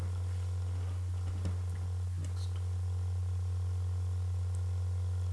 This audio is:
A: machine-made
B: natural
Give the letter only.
B